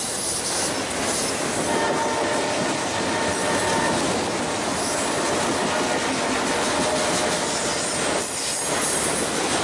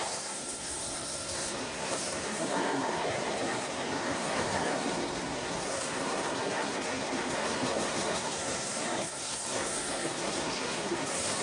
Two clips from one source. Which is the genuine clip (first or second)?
first